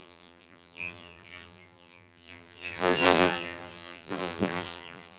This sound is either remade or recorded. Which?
remade